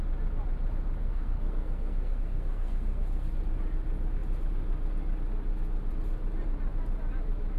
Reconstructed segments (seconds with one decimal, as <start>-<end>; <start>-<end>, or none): 1.0-3.3